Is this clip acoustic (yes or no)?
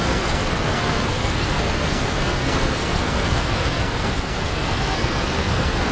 no